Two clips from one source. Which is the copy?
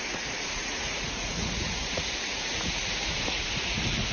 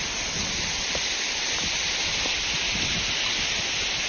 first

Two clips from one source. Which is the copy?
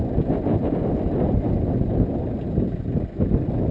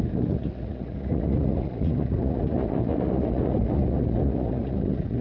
second